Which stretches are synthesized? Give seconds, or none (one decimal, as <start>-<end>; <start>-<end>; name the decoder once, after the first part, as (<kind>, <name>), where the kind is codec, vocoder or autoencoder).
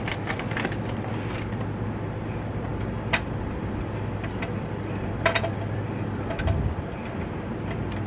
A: none